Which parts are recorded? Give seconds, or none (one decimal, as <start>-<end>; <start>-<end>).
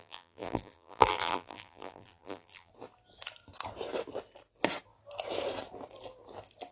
2.7-6.7